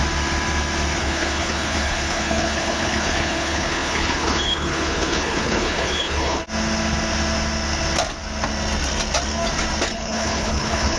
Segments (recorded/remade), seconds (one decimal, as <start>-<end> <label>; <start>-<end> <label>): 0.0-1.0 recorded; 1.0-6.4 remade; 6.4-9.9 recorded; 9.9-11.0 remade